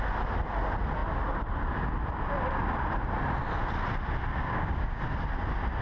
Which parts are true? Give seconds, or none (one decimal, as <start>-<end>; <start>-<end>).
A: 0.0-4.3; 5.0-5.8